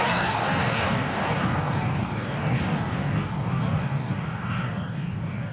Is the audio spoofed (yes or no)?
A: yes